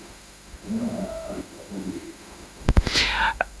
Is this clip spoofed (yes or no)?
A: yes